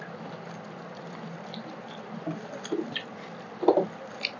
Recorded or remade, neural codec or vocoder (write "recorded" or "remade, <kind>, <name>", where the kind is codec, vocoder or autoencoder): recorded